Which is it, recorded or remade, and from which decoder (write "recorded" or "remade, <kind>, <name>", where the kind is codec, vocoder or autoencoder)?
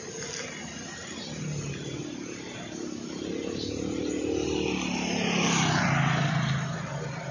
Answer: recorded